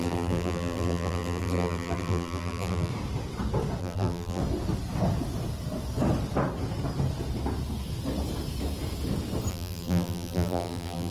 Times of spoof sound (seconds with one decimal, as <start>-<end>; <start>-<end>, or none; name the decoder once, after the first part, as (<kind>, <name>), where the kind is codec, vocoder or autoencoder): 0.0-2.9 (vocoder, BigVGAN v2); 3.8-4.4; 9.5-11.1